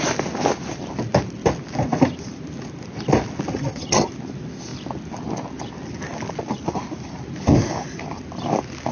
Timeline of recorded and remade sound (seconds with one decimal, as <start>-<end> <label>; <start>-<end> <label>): 0.0-3.5 recorded; 3.5-4.1 remade; 4.1-8.9 recorded

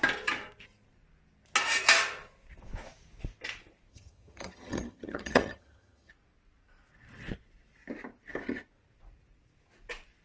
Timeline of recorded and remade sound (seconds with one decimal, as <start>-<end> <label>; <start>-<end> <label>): 0.0-3.9 recorded; 3.9-6.1 remade; 6.1-10.2 recorded

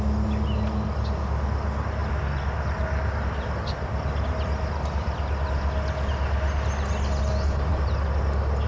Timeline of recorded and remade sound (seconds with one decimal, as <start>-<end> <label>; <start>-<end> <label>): 0.0-8.7 recorded

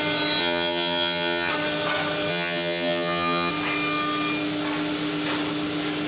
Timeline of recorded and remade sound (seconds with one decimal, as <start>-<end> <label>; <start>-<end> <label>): 0.0-0.4 recorded; 0.4-1.5 remade; 1.5-2.3 recorded; 2.3-3.5 remade; 3.5-6.1 recorded